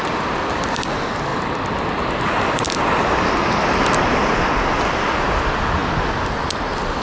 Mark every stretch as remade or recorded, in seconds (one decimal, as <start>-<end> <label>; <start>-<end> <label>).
0.0-7.0 recorded